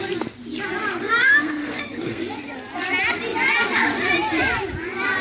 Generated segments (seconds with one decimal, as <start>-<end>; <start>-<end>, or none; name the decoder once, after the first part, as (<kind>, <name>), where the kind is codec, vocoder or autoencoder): 0.9-2.2 (codec, SNAC)